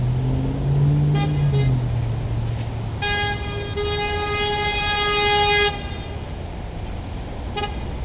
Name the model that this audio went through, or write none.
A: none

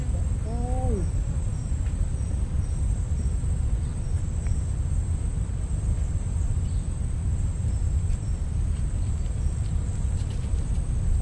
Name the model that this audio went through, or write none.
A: none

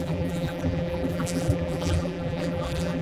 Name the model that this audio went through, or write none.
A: vocoder, BigVGAN v2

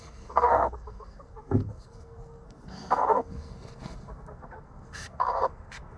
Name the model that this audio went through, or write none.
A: codec, SNAC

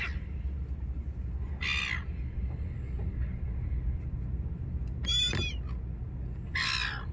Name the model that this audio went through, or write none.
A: none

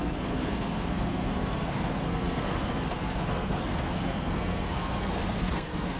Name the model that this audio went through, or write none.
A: codec, SNAC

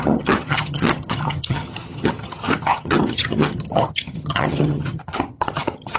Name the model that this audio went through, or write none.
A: vocoder, HiFi-GAN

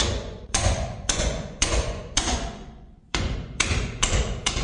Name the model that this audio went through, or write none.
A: vocoder, Vocos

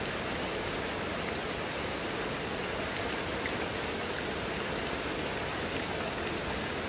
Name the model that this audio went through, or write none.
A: none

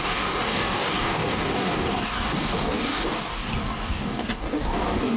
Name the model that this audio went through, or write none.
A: codec, DAC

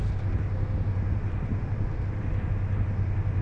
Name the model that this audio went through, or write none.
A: none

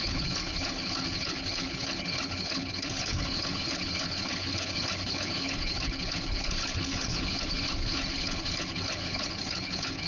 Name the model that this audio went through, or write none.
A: codec, HILCodec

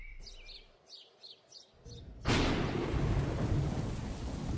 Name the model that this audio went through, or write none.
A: none